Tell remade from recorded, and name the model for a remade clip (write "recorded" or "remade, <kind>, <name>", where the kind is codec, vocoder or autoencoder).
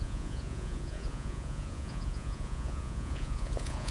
remade, vocoder, Vocos